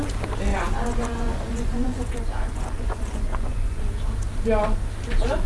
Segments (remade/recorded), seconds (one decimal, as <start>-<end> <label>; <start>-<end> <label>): 0.0-0.5 recorded; 0.5-3.8 remade; 3.8-5.5 recorded